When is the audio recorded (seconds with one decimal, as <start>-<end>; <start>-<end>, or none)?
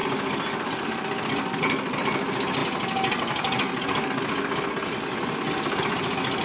0.0-6.4